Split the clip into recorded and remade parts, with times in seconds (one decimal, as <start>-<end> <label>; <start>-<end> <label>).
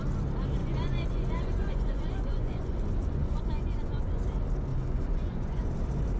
0.0-0.6 recorded; 0.6-4.2 remade; 4.2-4.7 recorded; 4.7-5.7 remade; 5.7-6.2 recorded